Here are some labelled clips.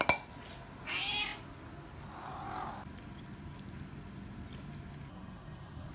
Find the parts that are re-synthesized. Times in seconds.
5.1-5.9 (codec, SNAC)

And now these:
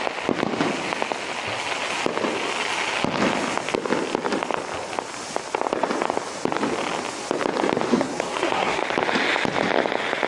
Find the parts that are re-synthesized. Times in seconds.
7.9-8.8 (codec, SNAC)

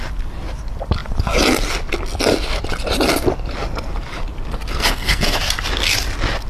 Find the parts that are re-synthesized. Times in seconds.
4.7-5.4 (codec, SNAC)

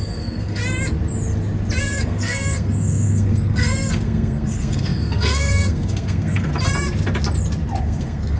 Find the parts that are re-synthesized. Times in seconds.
0.0-0.6 (codec, SNAC); 1.8-6.5; 7.8-8.4

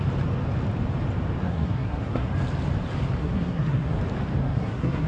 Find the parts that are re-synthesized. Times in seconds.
1.4-2.3 (codec, SNAC); 3.2-4.0; 4.4-5.1

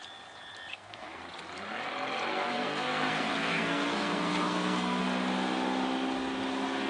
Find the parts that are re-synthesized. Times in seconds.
0.7-1.2 (codec, SNAC); 2.3-5.0